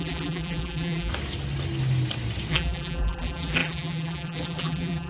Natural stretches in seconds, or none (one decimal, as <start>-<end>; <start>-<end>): 1.1-2.5

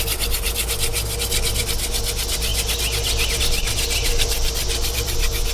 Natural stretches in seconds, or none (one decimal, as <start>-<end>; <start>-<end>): 0.0-4.0